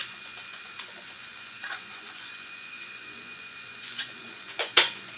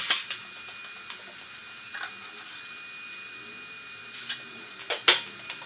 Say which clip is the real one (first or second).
second